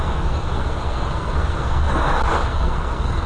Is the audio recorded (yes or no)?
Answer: no